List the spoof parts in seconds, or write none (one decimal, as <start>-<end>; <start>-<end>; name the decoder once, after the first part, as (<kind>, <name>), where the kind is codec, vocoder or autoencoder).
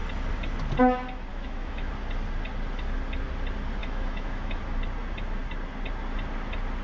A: 1.3-1.9 (autoencoder, DAC-VAE); 3.8-4.6